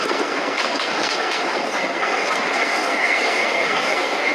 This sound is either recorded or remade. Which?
remade